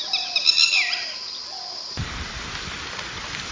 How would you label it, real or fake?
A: fake